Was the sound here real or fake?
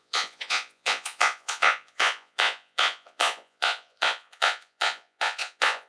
fake